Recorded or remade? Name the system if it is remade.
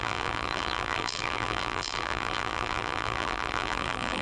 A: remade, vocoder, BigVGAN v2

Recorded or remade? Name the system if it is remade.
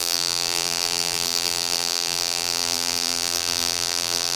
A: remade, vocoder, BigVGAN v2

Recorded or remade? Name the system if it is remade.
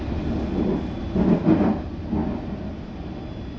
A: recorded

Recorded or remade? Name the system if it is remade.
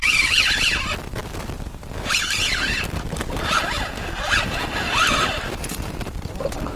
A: recorded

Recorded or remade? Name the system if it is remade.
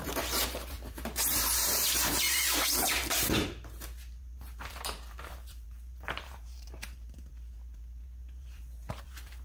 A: remade, vocoder, BigVGAN v2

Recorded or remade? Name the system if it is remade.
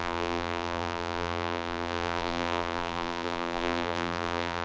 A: remade, vocoder, BigVGAN v2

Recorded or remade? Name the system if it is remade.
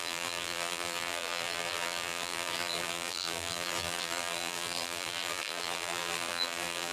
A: remade, vocoder, BigVGAN v2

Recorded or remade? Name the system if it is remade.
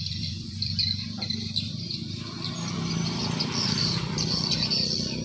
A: remade, vocoder, BigVGAN v2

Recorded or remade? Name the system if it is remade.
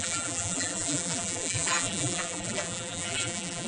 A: remade, vocoder, BigVGAN v2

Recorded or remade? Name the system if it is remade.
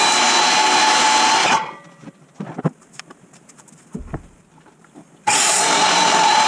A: remade, vocoder, BigVGAN v2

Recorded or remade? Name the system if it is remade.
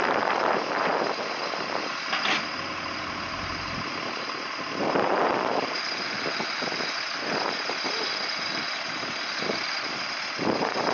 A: recorded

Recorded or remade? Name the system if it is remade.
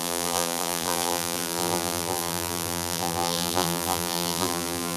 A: remade, vocoder, BigVGAN v2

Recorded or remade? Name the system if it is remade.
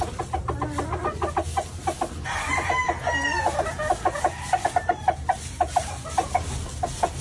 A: recorded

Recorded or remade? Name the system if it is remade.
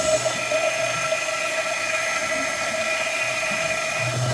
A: recorded